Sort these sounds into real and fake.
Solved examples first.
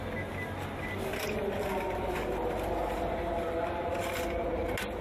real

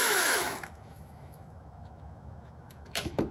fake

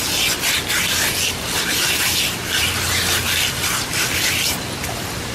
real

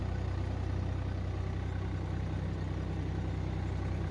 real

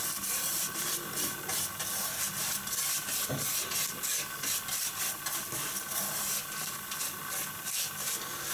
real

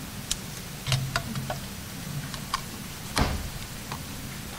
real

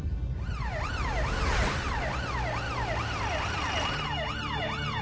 real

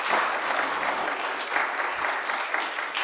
real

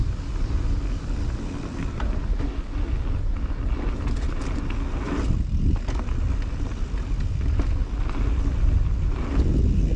real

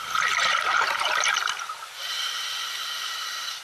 real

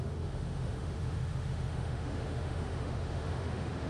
fake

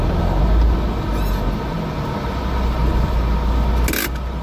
real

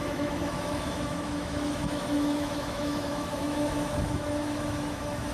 fake